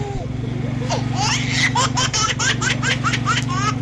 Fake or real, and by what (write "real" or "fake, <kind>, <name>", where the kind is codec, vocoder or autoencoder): real